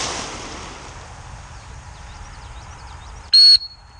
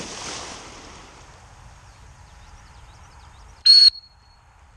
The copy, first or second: second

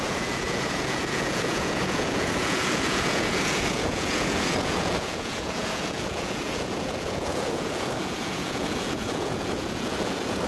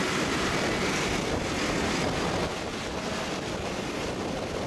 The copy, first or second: first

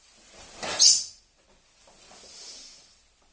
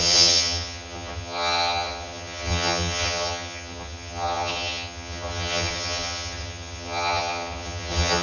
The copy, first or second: second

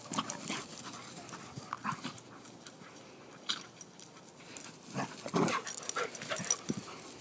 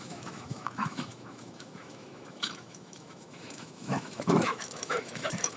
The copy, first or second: second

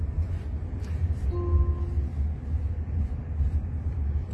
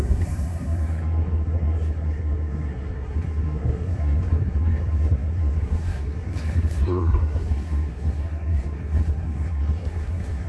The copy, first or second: second